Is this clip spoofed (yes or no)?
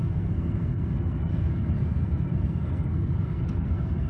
yes